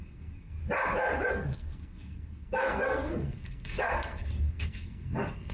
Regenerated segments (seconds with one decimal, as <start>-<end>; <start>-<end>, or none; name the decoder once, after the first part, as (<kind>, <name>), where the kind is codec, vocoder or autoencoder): 0.0-0.6 (codec, SNAC); 1.3-5.5